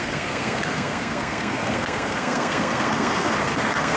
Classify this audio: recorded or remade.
remade